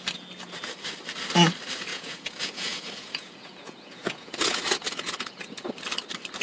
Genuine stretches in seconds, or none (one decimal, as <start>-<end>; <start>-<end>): 0.0-1.9; 5.7-6.4